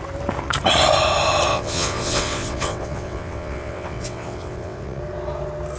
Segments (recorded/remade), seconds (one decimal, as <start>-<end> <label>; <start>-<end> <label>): 0.0-1.5 recorded; 1.5-5.0 remade; 5.0-5.8 recorded